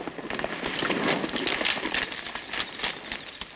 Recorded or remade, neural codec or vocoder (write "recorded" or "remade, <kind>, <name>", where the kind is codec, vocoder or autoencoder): recorded